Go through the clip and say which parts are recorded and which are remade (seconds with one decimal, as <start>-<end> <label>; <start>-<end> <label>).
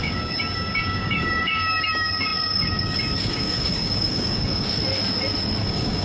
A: 0.0-4.8 remade; 4.8-5.6 recorded; 5.6-6.0 remade